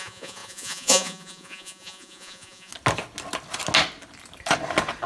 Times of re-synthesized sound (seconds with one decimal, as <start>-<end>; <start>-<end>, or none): 0.0-2.7

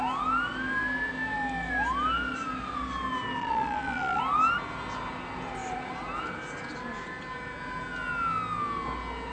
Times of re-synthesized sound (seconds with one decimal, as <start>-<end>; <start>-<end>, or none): 3.4-4.2

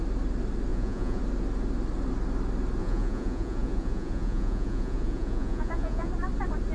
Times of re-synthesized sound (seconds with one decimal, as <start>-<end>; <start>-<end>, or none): 0.7-1.2; 2.8-6.1

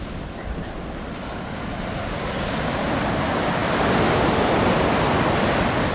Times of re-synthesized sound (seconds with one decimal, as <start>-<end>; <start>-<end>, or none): none

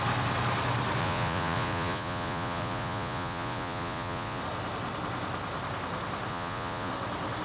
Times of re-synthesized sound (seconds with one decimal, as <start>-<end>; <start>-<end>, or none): 1.0-4.4; 6.3-6.9

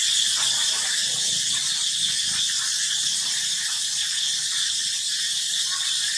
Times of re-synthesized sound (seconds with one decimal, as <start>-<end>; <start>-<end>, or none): none

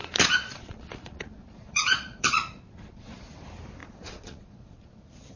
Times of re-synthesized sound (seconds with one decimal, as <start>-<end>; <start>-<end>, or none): 0.0-3.2; 3.8-5.0